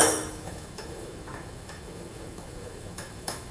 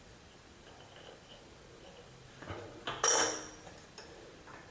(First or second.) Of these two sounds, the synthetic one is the first